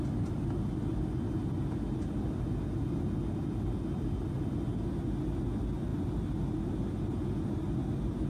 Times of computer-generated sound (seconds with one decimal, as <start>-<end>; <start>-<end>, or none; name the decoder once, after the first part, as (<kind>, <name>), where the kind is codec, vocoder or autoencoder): none